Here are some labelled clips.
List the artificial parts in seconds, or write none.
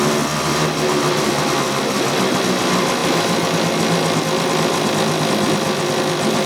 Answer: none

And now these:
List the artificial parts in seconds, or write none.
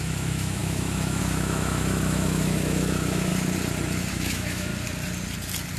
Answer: 0.0-3.3 (autoencoder, DAC-VAE); 4.1-4.7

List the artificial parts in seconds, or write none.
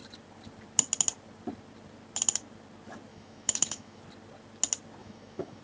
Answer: 3.1-4.0 (autoencoder, DAC-VAE); 5.0-5.6